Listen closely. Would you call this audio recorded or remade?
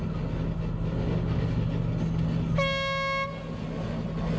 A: recorded